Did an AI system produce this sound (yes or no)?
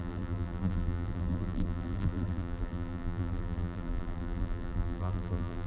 yes